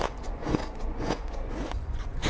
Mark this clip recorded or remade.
remade